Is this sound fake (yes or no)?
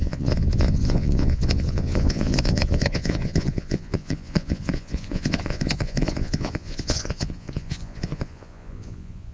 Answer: yes